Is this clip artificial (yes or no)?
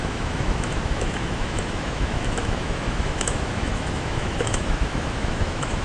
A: yes